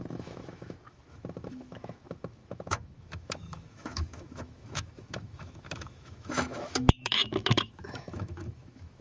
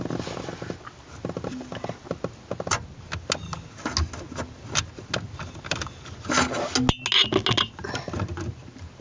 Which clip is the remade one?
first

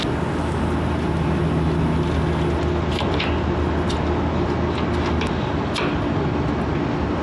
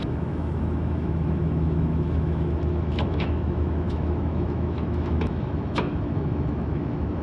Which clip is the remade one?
second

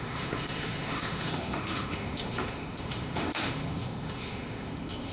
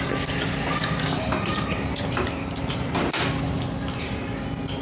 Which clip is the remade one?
first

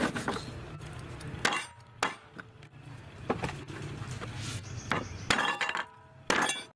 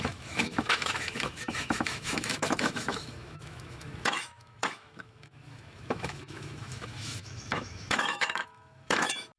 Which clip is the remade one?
second